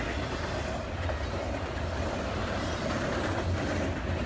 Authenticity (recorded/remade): recorded